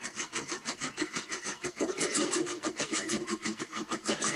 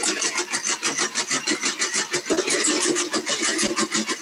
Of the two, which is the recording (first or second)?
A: second